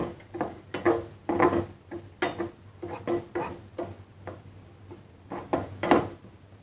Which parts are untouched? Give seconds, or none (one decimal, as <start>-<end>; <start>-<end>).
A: 0.0-6.6